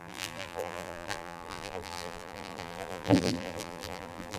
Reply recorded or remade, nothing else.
remade